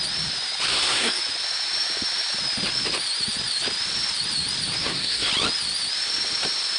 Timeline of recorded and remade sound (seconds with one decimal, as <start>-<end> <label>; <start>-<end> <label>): 0.0-0.7 recorded; 0.7-1.2 remade; 1.2-4.8 recorded; 4.8-5.3 remade; 5.3-6.8 recorded